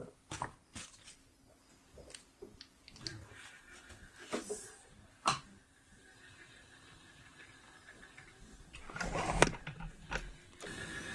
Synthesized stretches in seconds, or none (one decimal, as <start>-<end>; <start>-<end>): none